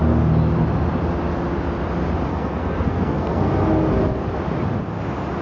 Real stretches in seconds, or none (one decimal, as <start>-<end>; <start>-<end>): 0.0-2.3; 3.5-5.4